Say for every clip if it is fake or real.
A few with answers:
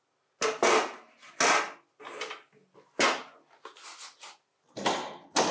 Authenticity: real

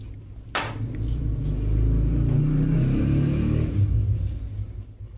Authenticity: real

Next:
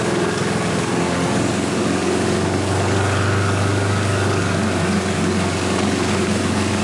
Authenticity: fake